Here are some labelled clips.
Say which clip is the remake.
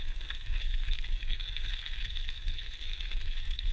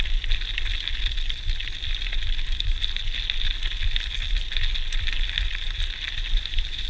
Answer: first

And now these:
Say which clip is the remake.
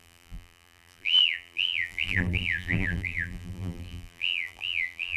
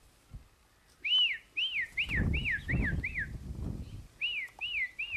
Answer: first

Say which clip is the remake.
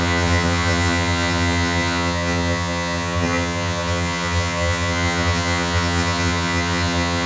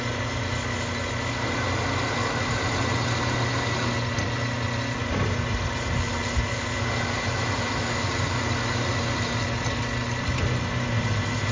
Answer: first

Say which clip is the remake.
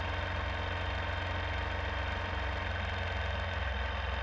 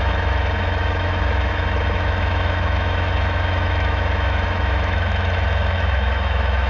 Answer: second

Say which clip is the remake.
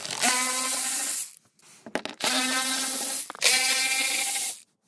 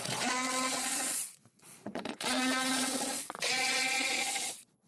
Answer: second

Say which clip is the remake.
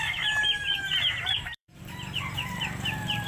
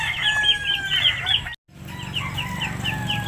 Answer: first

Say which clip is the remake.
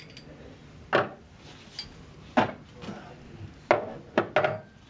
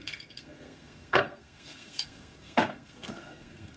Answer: second